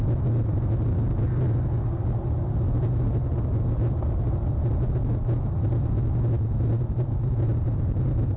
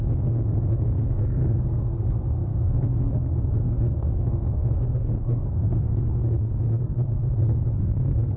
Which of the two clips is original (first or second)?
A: first